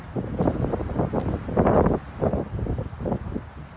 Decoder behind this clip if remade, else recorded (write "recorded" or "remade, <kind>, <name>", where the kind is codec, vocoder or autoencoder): recorded